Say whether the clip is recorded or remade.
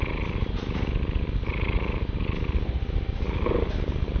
remade